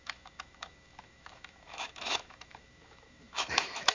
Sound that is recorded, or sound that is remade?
remade